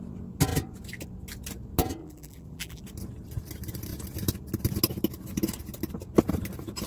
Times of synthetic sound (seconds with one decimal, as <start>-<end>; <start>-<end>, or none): 2.0-2.8